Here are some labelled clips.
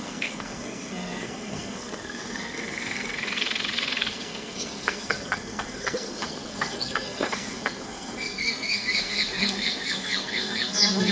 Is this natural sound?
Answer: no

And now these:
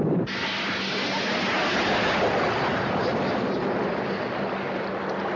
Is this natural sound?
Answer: yes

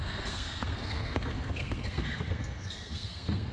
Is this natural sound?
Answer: no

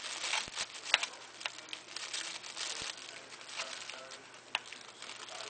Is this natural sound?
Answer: yes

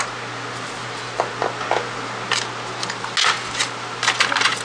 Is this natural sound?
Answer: yes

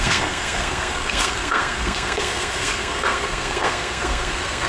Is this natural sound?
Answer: no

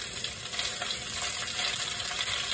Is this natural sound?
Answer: yes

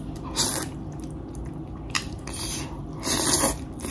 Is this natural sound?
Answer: yes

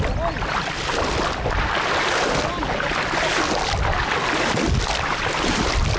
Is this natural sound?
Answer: yes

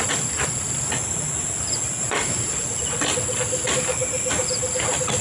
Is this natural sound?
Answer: yes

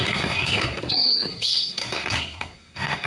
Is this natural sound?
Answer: no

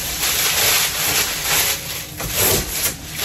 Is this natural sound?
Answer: yes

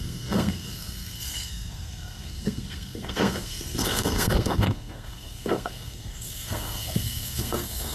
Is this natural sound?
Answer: no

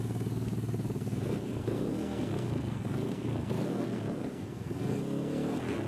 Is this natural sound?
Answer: no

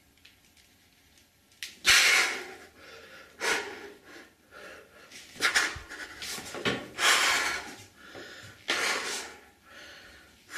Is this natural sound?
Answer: yes